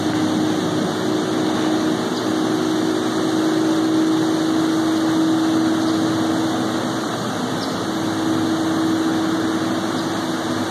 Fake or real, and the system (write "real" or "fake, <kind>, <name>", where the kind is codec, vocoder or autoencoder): real